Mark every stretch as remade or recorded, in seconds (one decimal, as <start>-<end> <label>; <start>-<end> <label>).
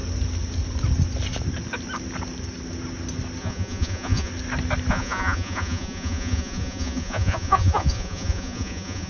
0.0-3.4 recorded; 3.4-4.3 remade; 4.3-4.9 recorded; 4.9-9.1 remade